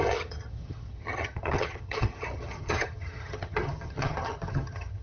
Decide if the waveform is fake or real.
fake